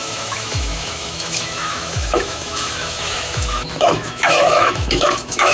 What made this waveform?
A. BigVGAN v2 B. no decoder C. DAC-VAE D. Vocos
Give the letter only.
C